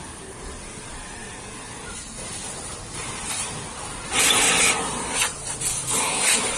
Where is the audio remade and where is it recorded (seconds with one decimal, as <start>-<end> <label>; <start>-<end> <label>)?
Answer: 0.0-5.7 recorded; 5.7-6.6 remade